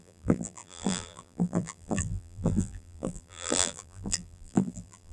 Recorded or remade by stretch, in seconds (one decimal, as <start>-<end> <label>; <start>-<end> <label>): 0.0-5.1 remade